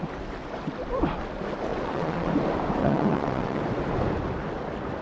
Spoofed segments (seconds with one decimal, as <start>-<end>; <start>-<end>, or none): 1.7-2.3; 2.8-3.6